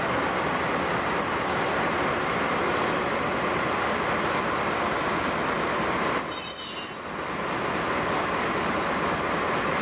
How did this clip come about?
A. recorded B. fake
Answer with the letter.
A